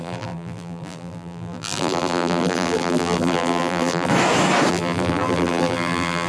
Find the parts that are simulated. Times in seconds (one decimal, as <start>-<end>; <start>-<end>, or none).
0.0-4.1; 4.7-6.3